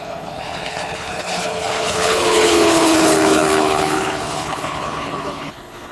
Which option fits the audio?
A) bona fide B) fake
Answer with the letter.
B